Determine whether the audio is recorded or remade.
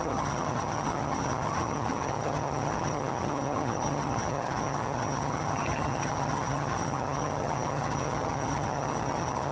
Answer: remade